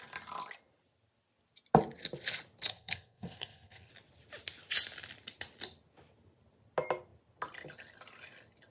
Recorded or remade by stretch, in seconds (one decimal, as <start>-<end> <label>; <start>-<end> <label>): 0.0-2.7 recorded; 2.7-3.9 remade; 3.9-8.7 recorded